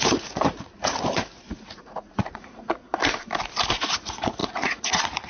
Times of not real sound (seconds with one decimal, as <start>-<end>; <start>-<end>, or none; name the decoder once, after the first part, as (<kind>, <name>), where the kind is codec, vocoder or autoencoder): 0.0-2.8 (vocoder, Vocos); 3.9-5.3